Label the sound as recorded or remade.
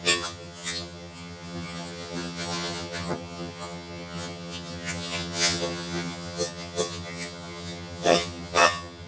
remade